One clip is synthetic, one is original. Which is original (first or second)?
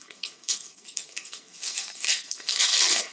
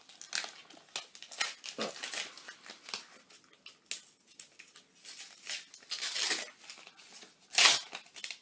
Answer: second